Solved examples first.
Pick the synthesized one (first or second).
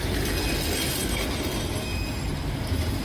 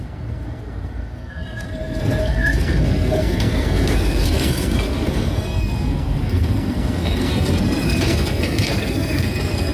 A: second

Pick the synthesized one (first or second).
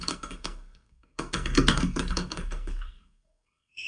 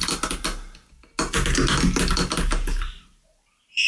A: first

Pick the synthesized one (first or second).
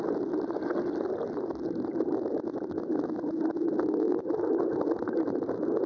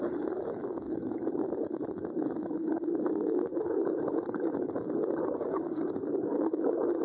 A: second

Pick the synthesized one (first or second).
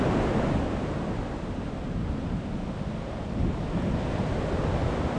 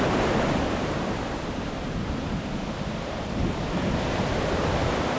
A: second